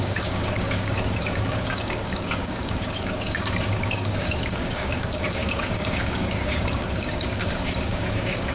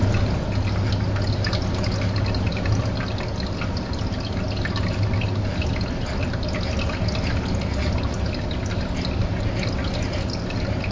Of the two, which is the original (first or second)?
second